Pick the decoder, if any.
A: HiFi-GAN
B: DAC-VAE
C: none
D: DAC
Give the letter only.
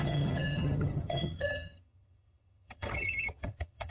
A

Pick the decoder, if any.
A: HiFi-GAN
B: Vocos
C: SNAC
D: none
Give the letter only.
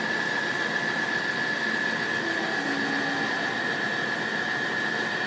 D